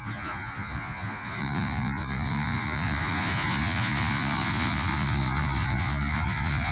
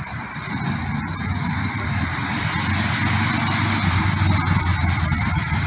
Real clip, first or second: second